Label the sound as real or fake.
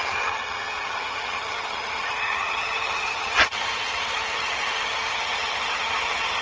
fake